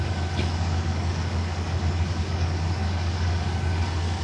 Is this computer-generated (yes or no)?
yes